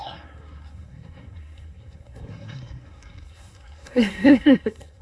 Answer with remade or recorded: remade